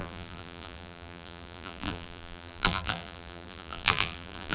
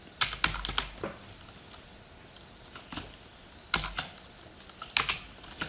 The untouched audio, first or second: second